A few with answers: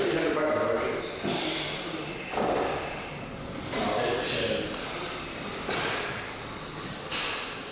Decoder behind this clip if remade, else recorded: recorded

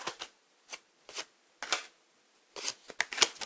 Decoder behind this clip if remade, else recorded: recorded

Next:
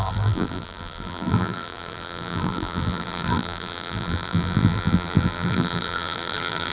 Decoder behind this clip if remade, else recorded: remade, vocoder, BigVGAN v2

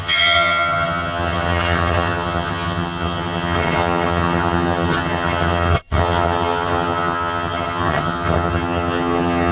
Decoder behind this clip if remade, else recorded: remade, vocoder, HiFi-GAN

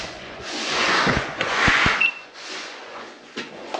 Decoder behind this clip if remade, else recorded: remade, vocoder, Vocos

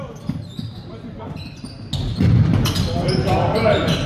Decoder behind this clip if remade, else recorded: recorded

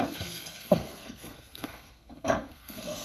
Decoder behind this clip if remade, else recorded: remade, codec, SNAC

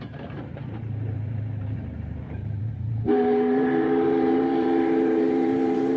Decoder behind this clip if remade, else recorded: remade, vocoder, BigVGAN v2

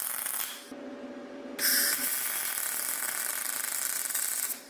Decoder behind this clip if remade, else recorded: recorded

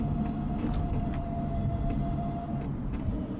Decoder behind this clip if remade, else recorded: recorded